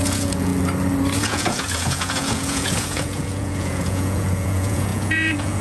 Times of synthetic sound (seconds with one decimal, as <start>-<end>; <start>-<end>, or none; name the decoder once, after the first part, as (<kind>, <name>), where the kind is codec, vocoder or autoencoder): 0.0-0.5 (vocoder, Vocos); 1.2-5.6